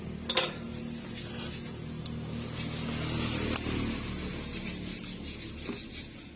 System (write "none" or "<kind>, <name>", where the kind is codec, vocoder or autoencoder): none